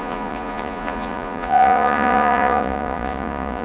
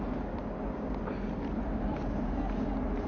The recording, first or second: second